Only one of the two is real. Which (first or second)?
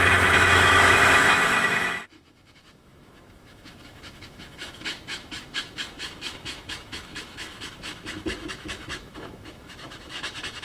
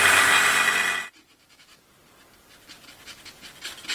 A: second